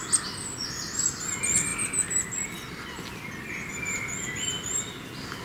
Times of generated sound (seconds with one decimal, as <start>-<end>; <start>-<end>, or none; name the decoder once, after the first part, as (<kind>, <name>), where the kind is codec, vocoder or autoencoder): none